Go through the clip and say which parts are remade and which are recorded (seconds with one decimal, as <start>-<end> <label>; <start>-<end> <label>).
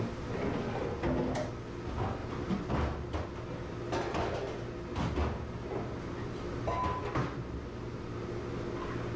0.0-2.2 recorded; 2.2-2.7 remade; 2.7-9.2 recorded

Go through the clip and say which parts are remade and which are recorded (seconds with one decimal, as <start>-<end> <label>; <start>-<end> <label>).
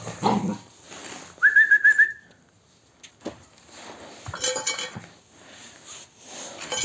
0.0-6.8 recorded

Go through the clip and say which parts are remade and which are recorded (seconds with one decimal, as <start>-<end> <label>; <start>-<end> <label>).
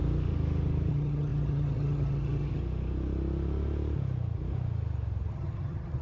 0.0-0.9 recorded; 0.9-2.6 remade; 2.6-5.3 recorded; 5.3-6.0 remade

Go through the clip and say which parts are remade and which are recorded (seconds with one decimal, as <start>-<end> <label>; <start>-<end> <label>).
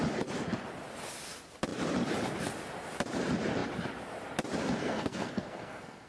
0.0-4.8 recorded; 4.8-6.1 remade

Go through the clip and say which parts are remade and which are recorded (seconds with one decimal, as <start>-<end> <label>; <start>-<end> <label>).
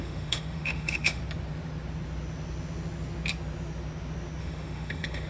0.0-1.2 remade; 1.2-4.4 recorded; 4.4-5.3 remade